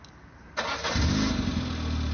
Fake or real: real